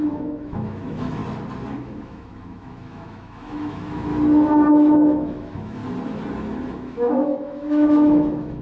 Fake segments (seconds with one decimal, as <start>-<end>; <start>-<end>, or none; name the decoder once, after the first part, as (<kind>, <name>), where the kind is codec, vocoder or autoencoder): 0.0-1.2 (autoencoder, DAC-VAE); 1.7-4.1; 4.7-5.8; 6.7-8.6